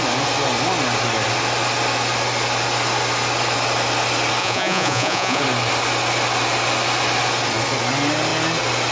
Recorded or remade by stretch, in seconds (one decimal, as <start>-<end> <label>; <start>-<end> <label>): 0.0-4.4 recorded; 4.4-5.4 remade; 5.4-8.9 recorded